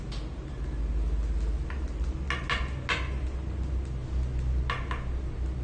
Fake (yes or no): no